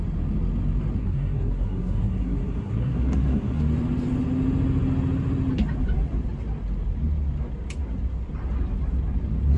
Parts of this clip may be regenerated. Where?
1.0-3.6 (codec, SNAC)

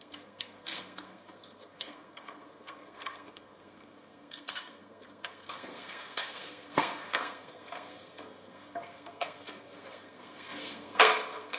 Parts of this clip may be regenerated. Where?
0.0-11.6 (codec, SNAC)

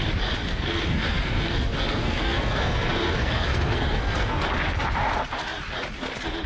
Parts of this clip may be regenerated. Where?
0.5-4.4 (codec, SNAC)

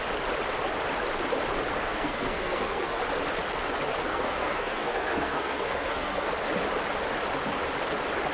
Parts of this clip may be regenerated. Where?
1.7-3.0 (codec, SNAC); 4.1-6.3

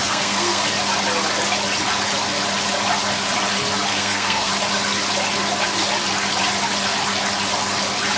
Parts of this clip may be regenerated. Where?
0.0-0.6 (codec, SNAC); 3.9-4.5